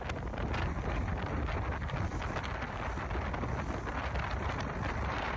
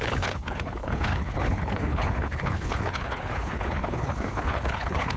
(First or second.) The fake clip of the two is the second